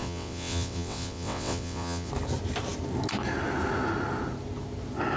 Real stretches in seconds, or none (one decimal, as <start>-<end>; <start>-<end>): 2.1-5.2